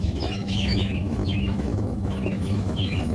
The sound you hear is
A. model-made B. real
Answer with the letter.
A